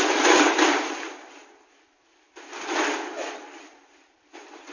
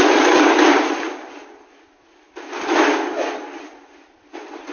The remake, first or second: first